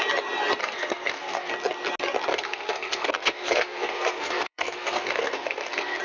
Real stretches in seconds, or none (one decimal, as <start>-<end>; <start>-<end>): 0.0-0.6; 1.5-2.3